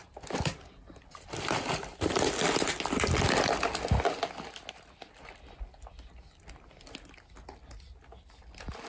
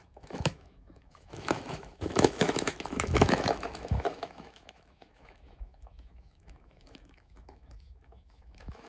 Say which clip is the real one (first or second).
first